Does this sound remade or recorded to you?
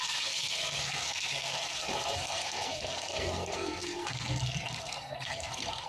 remade